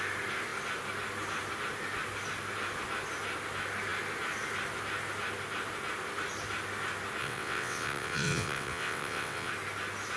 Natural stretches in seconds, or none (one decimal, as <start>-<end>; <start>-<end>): 0.0-7.2; 9.5-10.2